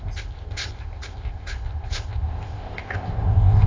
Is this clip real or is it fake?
fake